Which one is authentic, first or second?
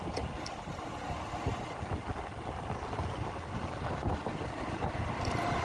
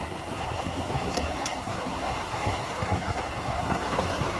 first